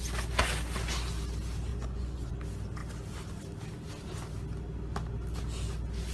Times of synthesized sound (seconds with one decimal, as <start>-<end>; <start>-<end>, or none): 1.7-2.3